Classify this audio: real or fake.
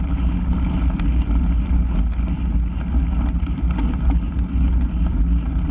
real